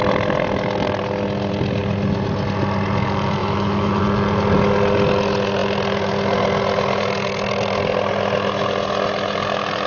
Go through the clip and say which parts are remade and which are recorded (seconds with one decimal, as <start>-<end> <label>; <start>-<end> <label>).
0.0-3.4 recorded; 3.4-4.0 remade; 4.0-9.9 recorded